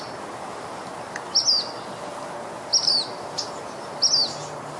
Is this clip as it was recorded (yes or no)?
yes